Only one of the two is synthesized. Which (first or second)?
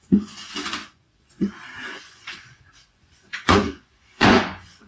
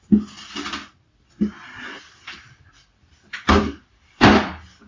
first